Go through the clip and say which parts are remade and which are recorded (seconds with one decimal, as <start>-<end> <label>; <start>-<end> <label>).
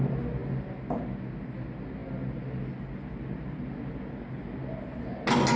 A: 0.0-5.6 recorded